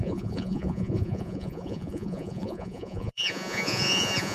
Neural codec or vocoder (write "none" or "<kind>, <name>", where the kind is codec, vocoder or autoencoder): vocoder, Vocos